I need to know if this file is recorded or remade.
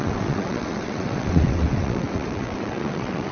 remade